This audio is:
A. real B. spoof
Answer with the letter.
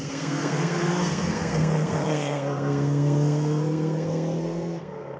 B